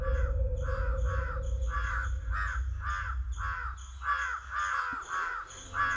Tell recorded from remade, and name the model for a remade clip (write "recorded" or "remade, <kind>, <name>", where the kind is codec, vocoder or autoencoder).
recorded